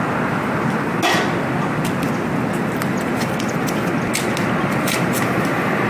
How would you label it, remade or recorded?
recorded